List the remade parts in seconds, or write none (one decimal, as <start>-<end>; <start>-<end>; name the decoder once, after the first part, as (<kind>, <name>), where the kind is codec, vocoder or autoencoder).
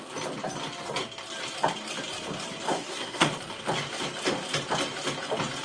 2.7-3.3 (codec, SNAC)